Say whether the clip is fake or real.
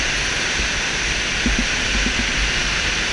real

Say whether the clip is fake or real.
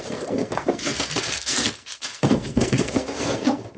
fake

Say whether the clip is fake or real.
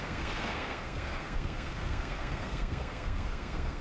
fake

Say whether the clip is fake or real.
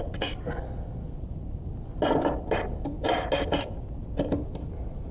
real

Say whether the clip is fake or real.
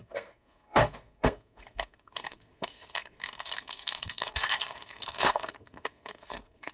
fake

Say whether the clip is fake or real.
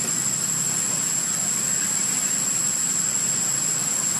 real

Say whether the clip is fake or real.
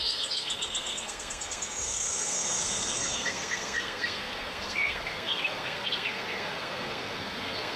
fake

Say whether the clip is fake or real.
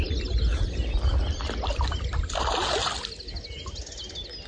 real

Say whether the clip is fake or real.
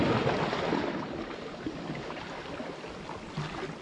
real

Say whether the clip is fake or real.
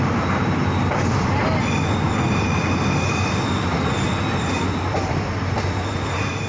real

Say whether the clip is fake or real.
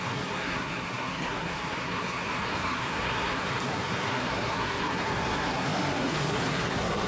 fake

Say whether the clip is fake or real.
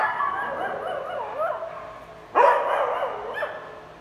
real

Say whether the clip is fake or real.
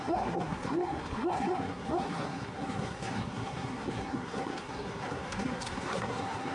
fake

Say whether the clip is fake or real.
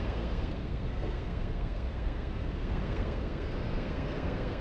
fake